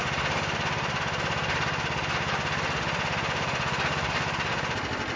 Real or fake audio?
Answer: real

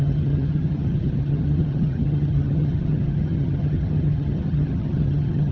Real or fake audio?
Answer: fake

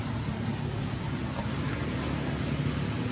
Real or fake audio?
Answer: real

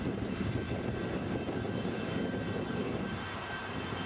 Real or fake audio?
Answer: real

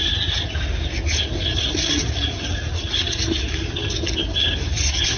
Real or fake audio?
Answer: real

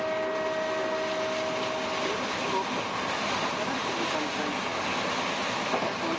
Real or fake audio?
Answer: real